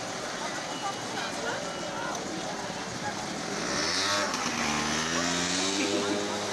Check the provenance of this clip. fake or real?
real